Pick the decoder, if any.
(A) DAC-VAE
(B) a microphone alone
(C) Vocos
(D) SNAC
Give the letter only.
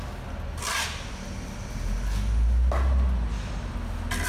B